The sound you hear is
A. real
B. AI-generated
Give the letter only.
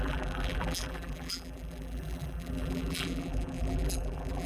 B